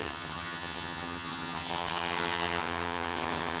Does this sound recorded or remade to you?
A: remade